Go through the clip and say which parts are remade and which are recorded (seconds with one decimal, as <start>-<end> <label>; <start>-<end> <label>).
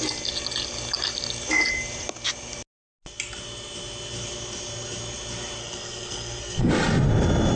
0.0-5.6 recorded; 5.6-6.7 remade; 6.7-7.6 recorded